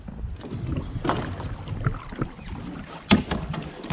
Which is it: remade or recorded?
recorded